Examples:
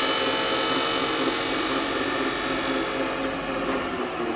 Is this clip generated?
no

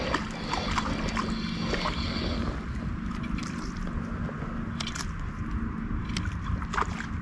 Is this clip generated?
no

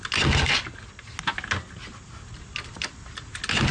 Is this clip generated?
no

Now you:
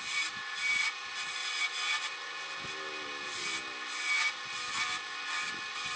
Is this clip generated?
no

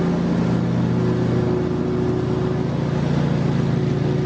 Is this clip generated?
no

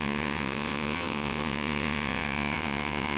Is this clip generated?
yes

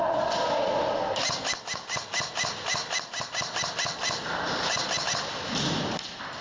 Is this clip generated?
no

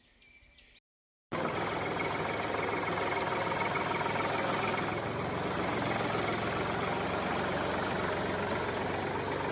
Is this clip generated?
no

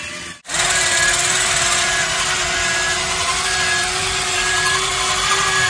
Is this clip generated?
no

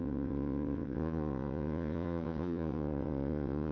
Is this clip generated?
yes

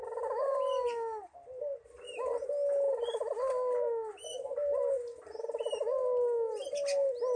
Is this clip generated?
no